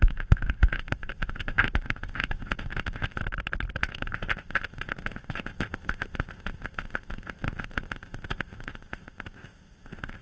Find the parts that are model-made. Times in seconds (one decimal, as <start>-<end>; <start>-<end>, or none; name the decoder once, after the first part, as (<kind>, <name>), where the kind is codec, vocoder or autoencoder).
0.0-3.2 (codec, ZipCodec); 3.8-10.2